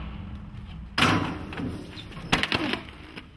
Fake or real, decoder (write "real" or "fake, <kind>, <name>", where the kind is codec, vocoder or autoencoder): real